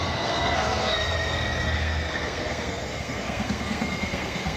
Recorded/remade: remade